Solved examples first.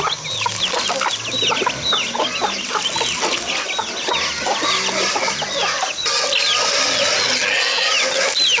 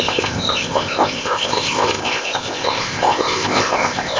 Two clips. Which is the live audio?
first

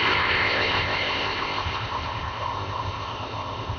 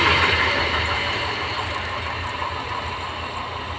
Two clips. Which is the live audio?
second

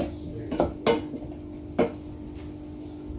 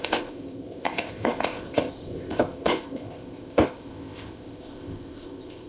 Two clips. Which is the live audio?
first